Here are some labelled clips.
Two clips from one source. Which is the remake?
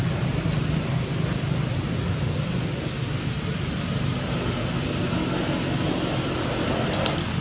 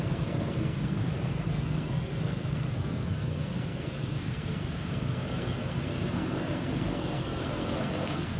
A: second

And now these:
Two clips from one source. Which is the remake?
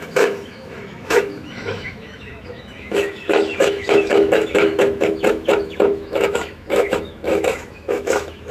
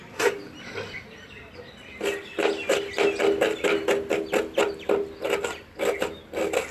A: first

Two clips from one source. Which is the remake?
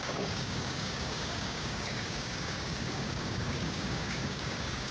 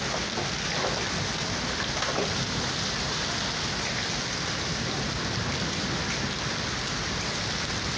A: first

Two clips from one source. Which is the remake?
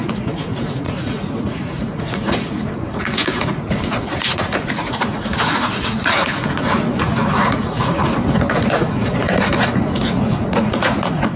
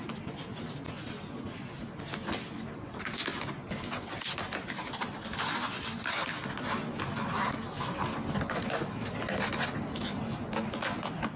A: first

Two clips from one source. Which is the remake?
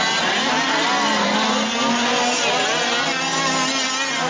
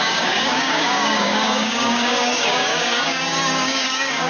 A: second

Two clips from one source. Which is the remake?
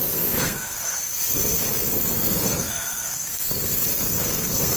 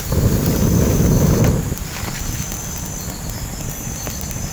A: first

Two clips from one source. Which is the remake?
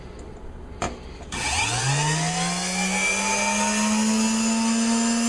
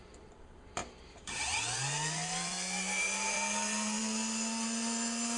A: second